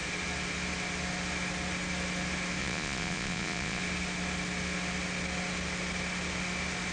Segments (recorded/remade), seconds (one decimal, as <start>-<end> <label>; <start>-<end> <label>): 0.0-2.6 recorded; 2.6-3.8 remade; 3.8-6.9 recorded